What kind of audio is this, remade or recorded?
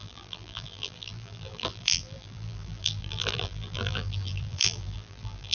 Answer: remade